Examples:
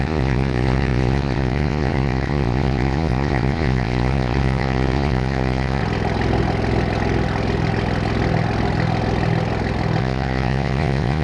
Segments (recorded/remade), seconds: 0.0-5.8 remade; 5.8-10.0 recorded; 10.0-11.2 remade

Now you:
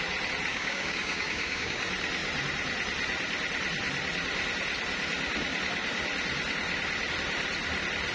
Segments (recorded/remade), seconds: 0.0-0.5 recorded; 0.5-1.8 remade; 1.8-8.1 recorded

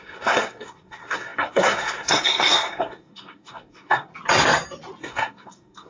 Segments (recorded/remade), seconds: 0.0-4.1 remade; 4.1-5.0 recorded; 5.0-5.9 remade

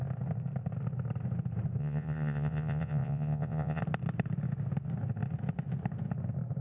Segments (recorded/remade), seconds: 0.0-1.8 recorded; 1.8-3.8 remade; 3.8-6.6 recorded

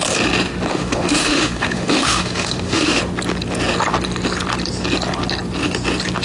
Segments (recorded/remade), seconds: 0.0-0.7 recorded; 0.7-3.0 remade; 3.0-6.2 recorded